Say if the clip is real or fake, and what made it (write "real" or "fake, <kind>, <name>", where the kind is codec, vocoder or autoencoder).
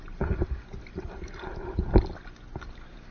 real